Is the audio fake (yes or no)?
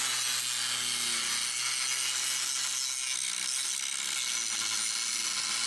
no